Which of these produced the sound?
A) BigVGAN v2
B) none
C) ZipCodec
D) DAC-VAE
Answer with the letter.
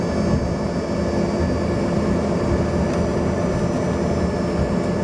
B